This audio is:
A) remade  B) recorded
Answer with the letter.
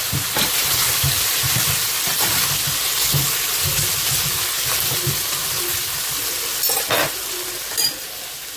B